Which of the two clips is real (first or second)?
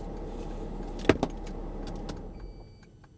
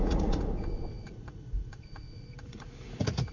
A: first